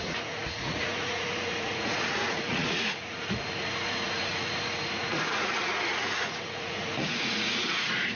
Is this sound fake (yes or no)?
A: yes